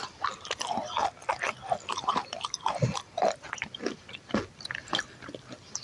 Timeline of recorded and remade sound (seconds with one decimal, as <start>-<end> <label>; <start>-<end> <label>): 0.0-5.8 recorded